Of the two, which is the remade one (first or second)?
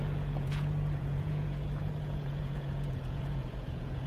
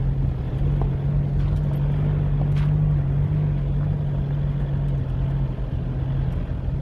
first